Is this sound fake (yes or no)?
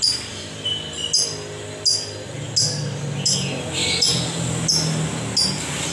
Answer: no